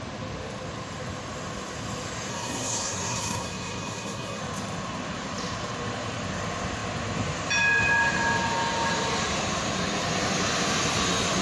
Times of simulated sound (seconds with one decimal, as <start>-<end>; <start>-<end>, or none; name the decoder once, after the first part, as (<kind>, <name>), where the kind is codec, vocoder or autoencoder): 2.3-4.4 (codec, SNAC)

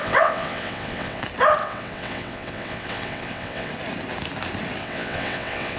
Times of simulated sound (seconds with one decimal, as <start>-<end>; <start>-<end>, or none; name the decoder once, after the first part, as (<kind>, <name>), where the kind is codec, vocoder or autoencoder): 0.0-1.2 (vocoder, WaveNeXt); 1.6-3.7; 4.8-5.8

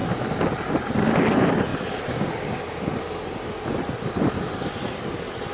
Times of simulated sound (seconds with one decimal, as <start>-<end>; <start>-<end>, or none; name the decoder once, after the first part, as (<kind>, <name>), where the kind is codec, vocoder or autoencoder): none

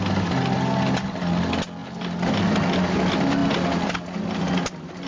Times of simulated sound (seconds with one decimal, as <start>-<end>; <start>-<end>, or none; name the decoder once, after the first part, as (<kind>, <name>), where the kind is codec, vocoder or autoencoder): 1.8-2.4 (vocoder, BigVGAN v2)

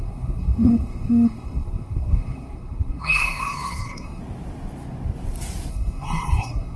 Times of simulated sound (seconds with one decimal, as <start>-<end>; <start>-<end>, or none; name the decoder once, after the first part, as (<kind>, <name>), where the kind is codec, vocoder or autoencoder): 0.0-4.2 (codec, SNAC); 5.7-6.8